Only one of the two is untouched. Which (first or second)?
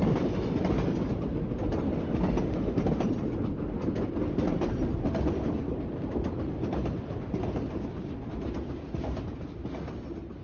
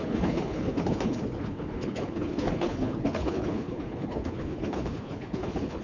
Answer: first